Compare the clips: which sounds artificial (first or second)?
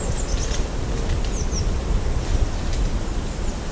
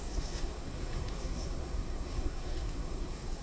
second